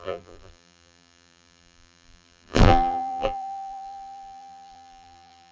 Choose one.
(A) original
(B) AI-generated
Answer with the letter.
B